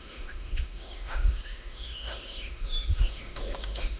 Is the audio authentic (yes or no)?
no